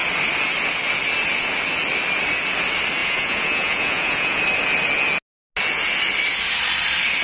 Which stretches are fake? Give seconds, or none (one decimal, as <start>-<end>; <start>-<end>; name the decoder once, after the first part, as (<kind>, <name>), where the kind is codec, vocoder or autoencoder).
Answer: 3.0-4.4 (vocoder, Vocos)